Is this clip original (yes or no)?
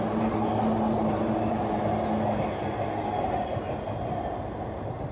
yes